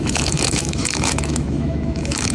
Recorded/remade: remade